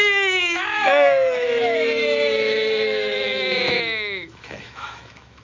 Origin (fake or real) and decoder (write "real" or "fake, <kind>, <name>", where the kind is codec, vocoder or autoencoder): fake, autoencoder, DAC-VAE